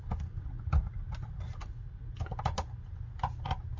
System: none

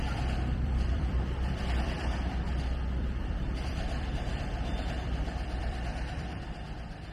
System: vocoder, BigVGAN v2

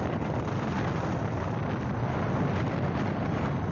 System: none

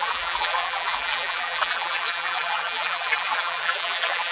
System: vocoder, BigVGAN v2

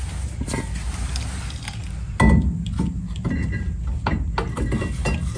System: none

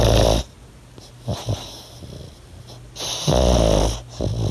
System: none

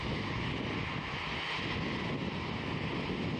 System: none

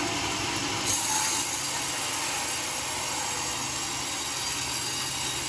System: none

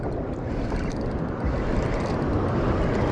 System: none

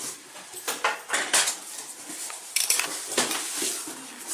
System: none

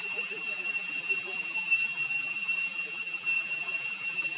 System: vocoder, BigVGAN v2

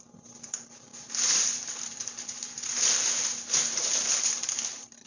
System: vocoder, BigVGAN v2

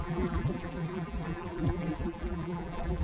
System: vocoder, BigVGAN v2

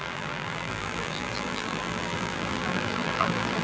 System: vocoder, BigVGAN v2